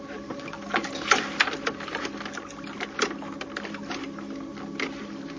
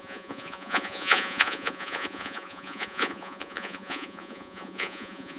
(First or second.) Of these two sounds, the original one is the first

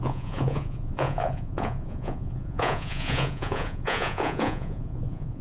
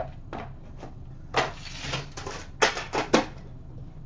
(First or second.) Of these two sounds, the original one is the second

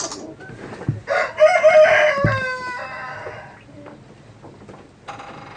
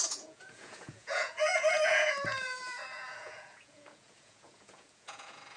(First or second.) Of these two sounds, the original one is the first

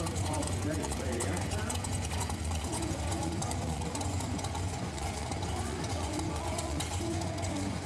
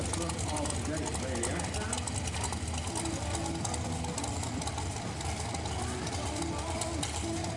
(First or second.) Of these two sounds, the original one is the second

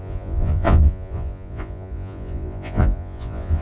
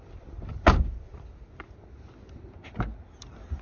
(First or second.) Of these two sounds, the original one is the second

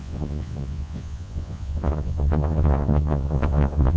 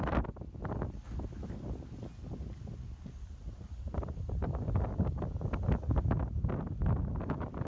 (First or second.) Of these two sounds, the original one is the second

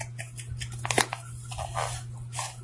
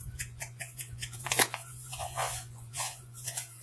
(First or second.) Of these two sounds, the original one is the first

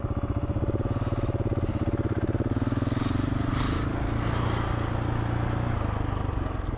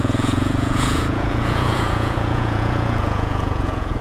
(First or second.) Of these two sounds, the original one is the first